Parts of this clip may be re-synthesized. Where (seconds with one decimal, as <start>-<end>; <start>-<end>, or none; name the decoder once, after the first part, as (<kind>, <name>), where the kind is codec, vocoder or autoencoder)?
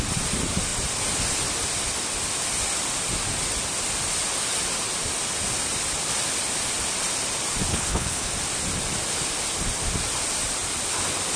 7.7-8.3 (codec, HILCodec)